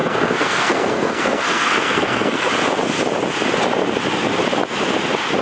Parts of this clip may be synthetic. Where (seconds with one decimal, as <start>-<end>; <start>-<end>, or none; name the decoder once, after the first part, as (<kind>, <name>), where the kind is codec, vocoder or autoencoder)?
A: 0.0-2.5 (codec, SNAC)